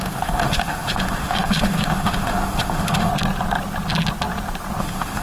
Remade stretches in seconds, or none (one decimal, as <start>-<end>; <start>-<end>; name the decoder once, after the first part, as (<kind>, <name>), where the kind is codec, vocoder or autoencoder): 0.0-3.1 (autoencoder, DAC-VAE); 4.8-5.2